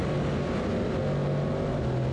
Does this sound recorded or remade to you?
recorded